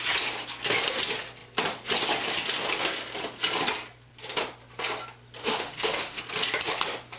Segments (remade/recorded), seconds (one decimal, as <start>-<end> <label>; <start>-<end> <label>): 0.0-5.4 recorded; 5.4-6.2 remade; 6.2-7.2 recorded

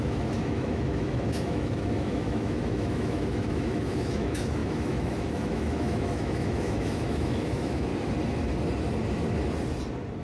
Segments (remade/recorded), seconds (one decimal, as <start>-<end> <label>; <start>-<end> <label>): 0.0-7.9 remade; 7.9-10.2 recorded

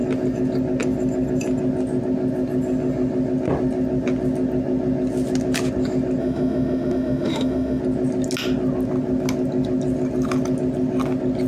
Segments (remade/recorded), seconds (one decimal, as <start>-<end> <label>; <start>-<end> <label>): 0.0-6.2 recorded; 6.2-7.8 remade; 7.8-11.5 recorded